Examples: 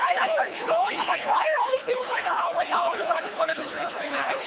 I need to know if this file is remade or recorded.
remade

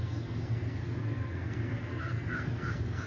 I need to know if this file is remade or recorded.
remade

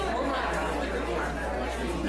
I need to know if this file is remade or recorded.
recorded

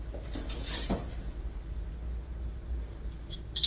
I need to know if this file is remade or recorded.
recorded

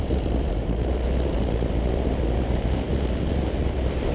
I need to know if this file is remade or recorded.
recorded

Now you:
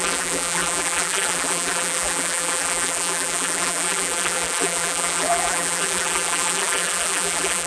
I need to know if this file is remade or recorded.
remade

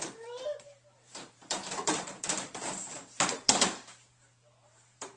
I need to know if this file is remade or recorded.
remade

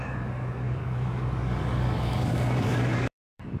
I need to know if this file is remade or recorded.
remade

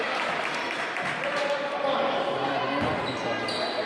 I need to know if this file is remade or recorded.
recorded